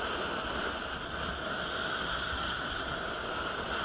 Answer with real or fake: real